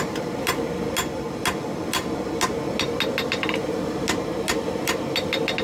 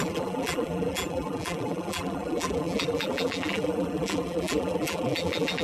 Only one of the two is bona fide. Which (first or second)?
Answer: first